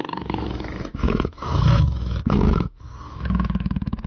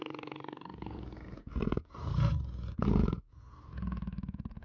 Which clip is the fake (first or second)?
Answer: first